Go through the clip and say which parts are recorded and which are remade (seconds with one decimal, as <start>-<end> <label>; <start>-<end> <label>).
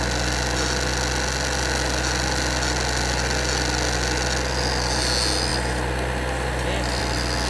0.0-7.5 recorded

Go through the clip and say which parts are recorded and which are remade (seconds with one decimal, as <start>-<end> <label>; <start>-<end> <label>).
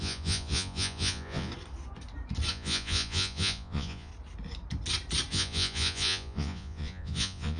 0.0-1.5 remade; 1.5-2.5 recorded; 2.5-4.1 remade; 4.1-5.3 recorded; 5.3-7.6 remade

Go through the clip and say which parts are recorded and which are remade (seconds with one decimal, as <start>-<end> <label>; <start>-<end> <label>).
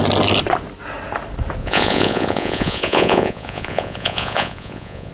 0.0-1.6 recorded; 1.6-5.1 remade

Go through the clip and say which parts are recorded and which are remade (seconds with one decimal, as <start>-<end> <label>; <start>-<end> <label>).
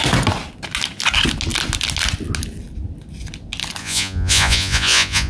0.0-3.8 recorded; 3.8-5.3 remade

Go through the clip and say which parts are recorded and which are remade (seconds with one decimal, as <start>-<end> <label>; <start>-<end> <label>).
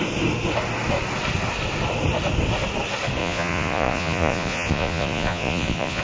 0.0-3.2 recorded; 3.2-6.0 remade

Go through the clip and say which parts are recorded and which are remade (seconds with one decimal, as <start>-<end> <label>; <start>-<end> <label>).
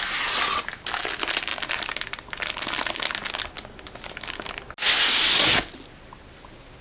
0.0-6.8 recorded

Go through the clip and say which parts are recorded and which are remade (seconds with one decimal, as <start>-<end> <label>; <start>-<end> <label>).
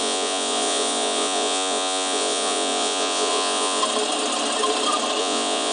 0.0-3.8 remade; 3.8-5.2 recorded; 5.2-5.7 remade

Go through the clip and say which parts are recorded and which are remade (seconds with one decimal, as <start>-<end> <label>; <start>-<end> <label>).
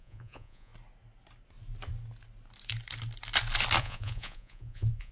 0.0-0.7 remade; 0.7-3.8 recorded; 3.8-5.1 remade